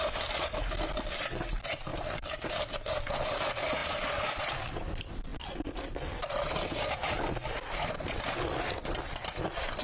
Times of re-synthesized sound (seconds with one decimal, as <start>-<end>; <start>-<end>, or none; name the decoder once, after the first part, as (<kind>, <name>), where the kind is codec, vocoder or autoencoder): 1.9-2.5 (vocoder, BigVGAN v2)

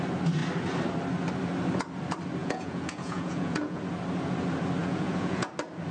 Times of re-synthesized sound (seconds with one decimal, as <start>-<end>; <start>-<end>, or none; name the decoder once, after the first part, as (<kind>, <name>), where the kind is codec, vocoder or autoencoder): 2.4-3.8 (vocoder, Vocos); 4.8-5.5

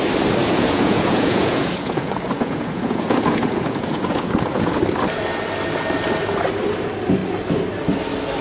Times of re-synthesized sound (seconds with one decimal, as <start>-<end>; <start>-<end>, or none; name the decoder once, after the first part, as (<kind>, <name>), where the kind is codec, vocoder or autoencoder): 0.4-4.8 (vocoder, Vocos)

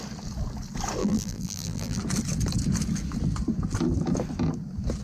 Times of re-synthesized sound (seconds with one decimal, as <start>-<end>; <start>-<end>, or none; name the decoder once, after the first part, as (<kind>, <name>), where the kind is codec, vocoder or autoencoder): 1.0-2.0 (vocoder, BigVGAN v2)

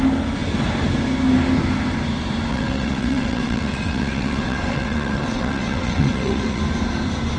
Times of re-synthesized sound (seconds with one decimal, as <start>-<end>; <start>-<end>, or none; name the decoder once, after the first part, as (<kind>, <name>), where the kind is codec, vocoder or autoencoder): 2.5-6.6 (vocoder, WaveNeXt)

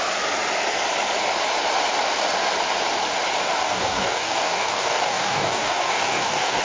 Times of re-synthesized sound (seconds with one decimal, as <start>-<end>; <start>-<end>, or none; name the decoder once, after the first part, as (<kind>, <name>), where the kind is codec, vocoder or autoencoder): 3.6-6.6 (codec, DAC)